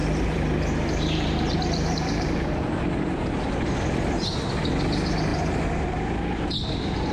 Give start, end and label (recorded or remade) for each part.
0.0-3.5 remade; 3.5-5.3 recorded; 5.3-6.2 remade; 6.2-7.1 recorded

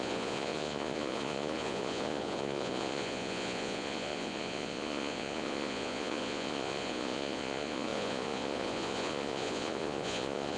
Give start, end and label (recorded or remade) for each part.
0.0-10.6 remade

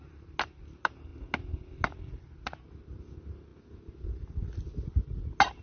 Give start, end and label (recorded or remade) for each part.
0.0-5.6 recorded

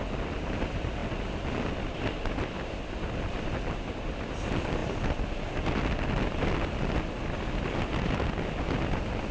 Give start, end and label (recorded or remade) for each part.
0.0-9.3 recorded